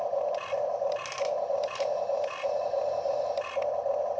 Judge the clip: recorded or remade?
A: recorded